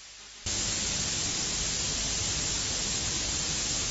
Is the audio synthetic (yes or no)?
no